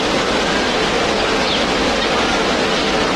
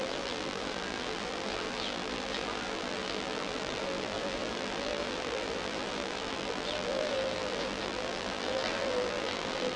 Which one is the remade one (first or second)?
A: second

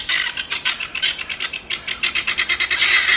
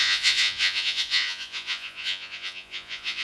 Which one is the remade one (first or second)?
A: second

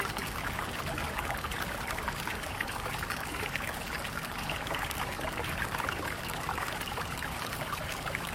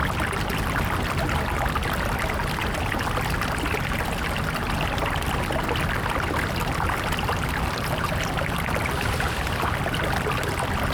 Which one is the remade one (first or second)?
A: first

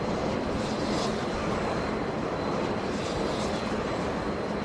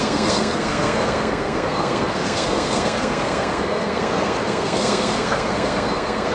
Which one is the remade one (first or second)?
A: second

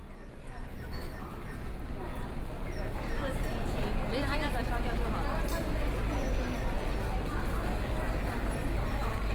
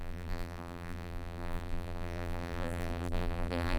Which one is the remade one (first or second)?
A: second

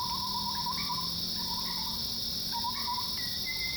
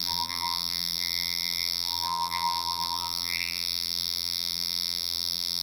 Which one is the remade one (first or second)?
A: second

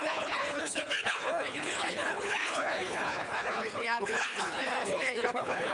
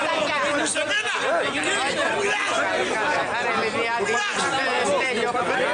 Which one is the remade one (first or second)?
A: first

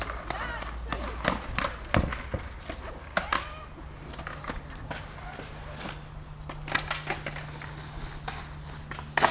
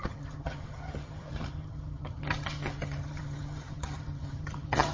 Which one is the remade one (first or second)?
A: second